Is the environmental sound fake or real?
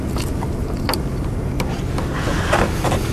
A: real